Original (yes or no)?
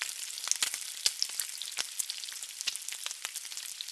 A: yes